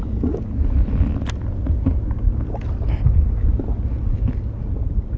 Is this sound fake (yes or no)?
no